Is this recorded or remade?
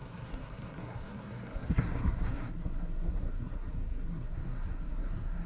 remade